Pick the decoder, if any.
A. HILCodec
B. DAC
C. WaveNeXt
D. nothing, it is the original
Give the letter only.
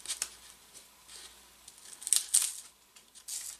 D